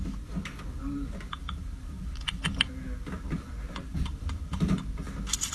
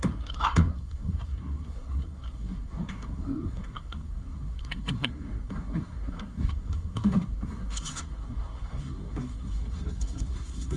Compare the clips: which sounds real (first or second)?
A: first